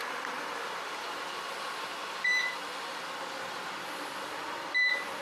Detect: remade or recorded remade